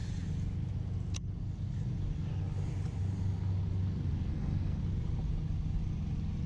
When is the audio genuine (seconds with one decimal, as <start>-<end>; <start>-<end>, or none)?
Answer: 0.0-4.3; 4.8-6.5